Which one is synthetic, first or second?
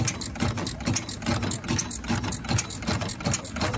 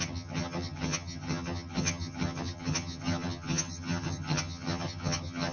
second